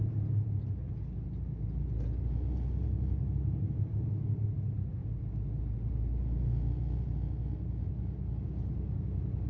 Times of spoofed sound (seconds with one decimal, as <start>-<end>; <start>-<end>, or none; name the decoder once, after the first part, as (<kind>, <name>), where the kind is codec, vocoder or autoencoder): none